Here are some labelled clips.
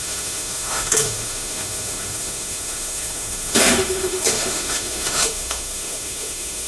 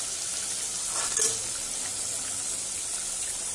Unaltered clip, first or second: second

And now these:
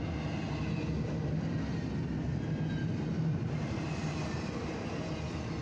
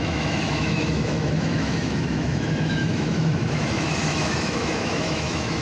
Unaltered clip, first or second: first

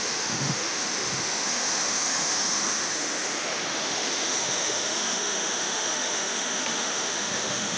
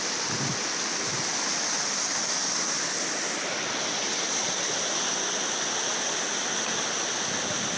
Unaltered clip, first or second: second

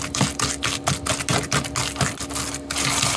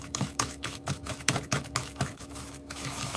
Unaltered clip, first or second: first